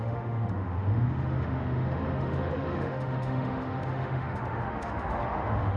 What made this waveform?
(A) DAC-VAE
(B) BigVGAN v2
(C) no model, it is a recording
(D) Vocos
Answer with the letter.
A